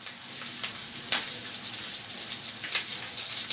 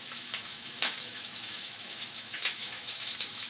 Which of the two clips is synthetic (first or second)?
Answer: second